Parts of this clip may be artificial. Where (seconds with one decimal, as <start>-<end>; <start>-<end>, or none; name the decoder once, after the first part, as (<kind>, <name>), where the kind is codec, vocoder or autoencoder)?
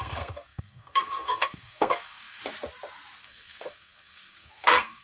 0.0-2.4 (codec, SNAC); 3.2-5.0